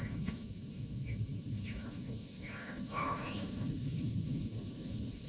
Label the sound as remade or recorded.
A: remade